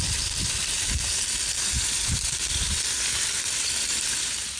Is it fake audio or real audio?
fake